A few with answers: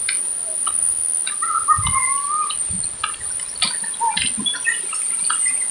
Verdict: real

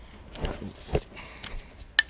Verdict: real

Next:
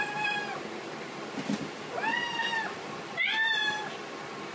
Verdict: real